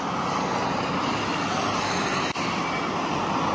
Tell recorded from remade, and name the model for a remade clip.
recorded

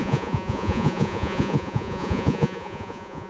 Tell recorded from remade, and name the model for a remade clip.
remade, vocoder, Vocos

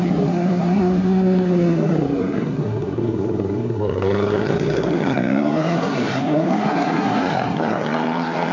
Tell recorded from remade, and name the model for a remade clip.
remade, codec, SNAC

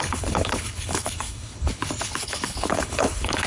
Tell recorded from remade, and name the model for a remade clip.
remade, codec, HILCodec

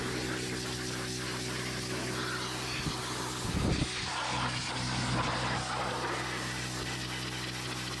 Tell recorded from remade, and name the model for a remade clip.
recorded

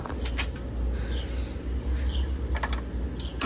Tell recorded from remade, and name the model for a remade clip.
recorded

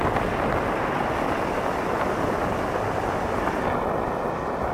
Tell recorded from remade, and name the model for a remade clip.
recorded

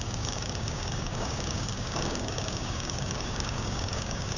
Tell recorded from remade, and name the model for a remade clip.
remade, codec, DAC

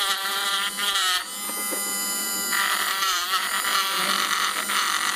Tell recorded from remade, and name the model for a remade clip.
remade, vocoder, BigVGAN v2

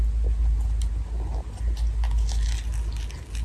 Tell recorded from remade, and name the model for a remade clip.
recorded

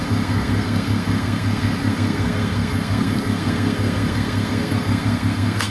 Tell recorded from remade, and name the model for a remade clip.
remade, codec, SNAC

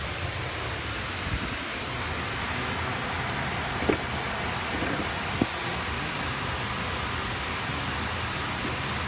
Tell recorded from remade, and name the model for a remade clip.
recorded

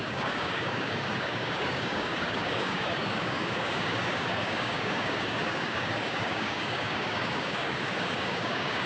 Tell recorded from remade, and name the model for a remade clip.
remade, codec, DAC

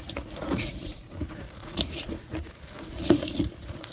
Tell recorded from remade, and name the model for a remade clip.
remade, vocoder, Vocos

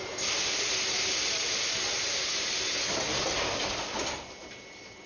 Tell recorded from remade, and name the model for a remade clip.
recorded